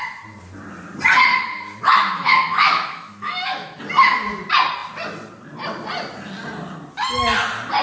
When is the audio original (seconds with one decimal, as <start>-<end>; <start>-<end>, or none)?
0.0-1.3; 3.8-7.8